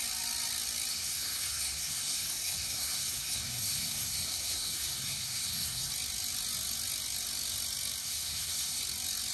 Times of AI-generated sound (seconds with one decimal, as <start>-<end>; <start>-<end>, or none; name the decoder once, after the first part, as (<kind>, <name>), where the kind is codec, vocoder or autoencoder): 0.9-5.9 (codec, SNAC); 8.0-8.8